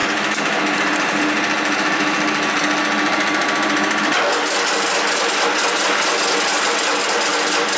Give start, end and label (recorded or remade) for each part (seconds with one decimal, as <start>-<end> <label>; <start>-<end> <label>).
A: 0.0-7.8 recorded